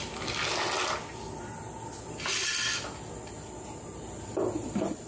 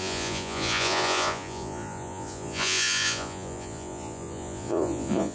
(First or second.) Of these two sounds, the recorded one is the first